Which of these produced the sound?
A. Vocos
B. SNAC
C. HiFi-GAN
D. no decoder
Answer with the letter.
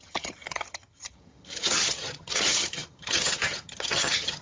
C